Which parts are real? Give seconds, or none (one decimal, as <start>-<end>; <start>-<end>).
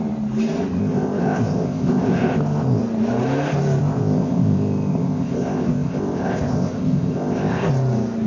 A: 0.0-0.8; 2.8-3.8; 7.7-8.3